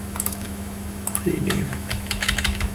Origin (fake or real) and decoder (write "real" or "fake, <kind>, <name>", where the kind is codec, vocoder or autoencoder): fake, autoencoder, DAC-VAE